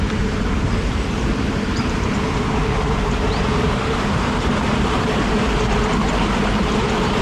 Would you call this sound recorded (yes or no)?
no